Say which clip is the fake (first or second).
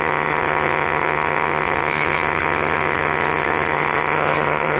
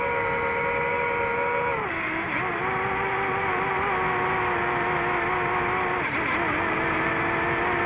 first